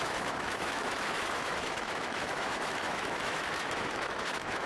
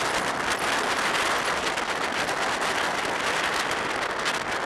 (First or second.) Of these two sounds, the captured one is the second